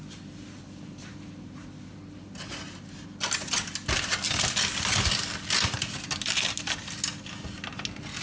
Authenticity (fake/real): real